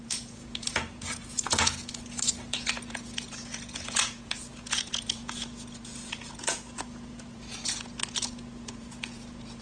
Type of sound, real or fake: fake